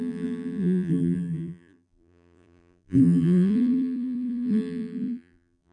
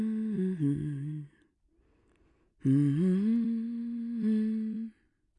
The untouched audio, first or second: second